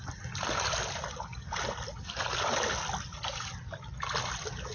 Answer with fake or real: real